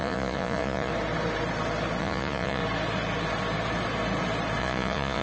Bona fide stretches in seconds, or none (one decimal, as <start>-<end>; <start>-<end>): 0.9-2.0; 2.6-4.6